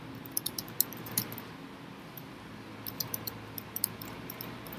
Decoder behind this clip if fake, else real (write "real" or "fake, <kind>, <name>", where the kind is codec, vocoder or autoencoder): real